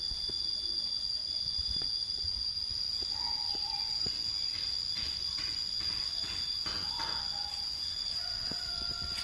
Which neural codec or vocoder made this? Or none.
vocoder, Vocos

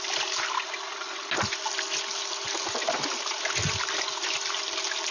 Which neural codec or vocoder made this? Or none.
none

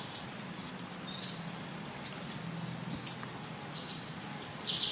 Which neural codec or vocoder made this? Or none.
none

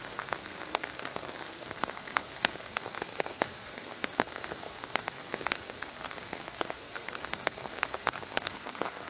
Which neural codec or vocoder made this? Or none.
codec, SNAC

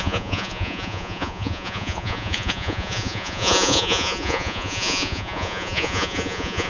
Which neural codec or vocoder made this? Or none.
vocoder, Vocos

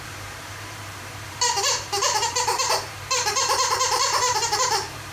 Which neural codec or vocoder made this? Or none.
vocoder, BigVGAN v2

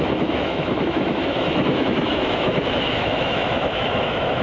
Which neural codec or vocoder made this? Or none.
autoencoder, DAC-VAE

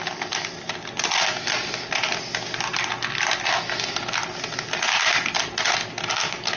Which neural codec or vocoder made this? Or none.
none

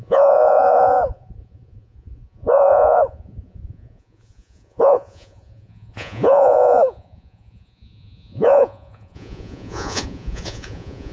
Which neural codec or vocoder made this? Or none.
vocoder, Vocos